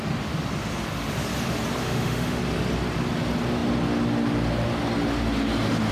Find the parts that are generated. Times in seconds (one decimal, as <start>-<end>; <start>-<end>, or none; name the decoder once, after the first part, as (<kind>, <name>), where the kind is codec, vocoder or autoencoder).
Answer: 1.8-2.4 (autoencoder, DAC-VAE)